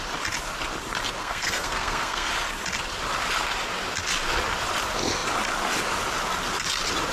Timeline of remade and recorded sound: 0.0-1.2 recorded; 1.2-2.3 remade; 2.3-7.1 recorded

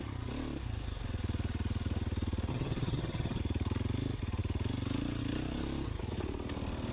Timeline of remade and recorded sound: 0.0-2.5 recorded; 2.5-3.4 remade; 3.4-6.9 recorded

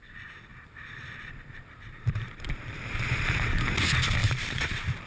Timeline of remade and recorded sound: 0.0-0.5 recorded; 0.5-3.6 remade; 3.6-4.2 recorded; 4.2-5.1 remade